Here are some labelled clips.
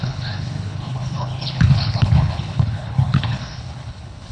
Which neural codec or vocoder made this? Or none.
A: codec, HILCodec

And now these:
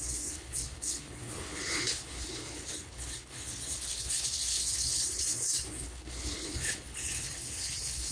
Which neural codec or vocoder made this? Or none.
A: codec, HILCodec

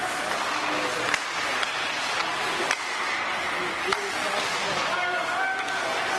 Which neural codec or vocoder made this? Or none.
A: none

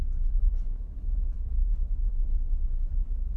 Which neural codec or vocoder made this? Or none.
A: codec, HILCodec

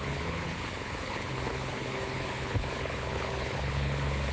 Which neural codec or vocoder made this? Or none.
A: codec, HILCodec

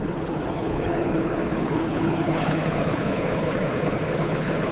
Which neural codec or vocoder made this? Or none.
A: codec, HILCodec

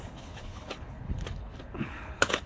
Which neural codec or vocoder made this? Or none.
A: codec, HILCodec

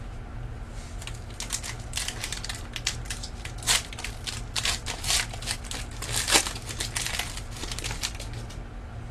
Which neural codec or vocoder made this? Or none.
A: none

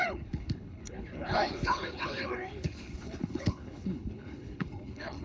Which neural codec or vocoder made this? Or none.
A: codec, HILCodec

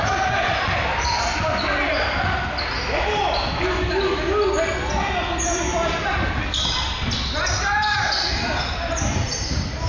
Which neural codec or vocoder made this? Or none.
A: none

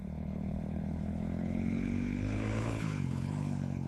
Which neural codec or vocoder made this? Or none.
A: codec, HILCodec